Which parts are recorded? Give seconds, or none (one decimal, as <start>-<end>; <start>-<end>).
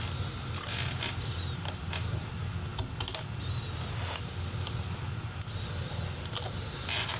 0.0-7.2